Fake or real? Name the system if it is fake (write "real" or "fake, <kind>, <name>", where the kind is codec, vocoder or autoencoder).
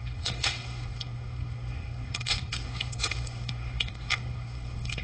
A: fake, codec, SNAC